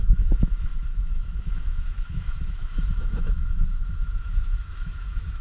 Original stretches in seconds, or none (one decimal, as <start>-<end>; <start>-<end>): none

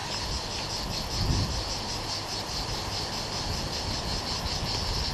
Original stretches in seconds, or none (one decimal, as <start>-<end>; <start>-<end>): 0.0-5.1

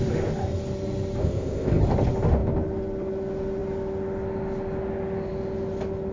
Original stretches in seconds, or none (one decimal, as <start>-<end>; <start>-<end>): 0.0-1.2; 1.8-6.1

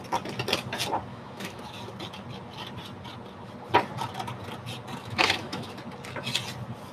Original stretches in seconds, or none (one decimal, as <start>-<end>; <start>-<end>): 0.0-1.1; 1.6-5.0; 5.7-6.9

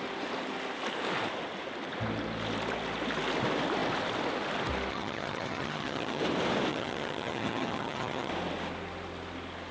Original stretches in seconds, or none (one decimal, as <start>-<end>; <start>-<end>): 0.0-4.9; 6.2-6.7; 8.3-9.7

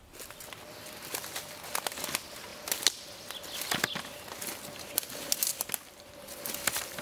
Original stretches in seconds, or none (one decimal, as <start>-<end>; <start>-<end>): 0.0-7.0